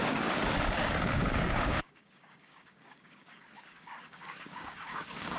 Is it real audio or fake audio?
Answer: fake